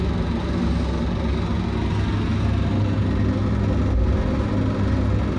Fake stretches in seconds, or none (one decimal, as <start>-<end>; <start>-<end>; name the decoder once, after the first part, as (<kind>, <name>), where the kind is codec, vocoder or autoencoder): none